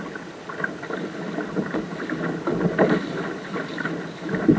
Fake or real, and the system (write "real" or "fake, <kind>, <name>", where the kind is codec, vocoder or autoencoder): real